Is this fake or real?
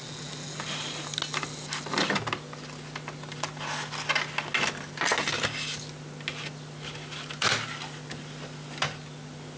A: real